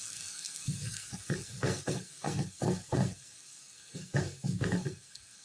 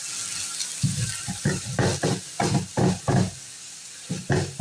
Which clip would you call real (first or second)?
second